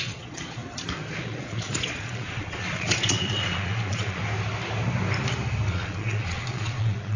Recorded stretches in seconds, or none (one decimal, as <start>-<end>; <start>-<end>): 0.6-1.2; 4.2-5.7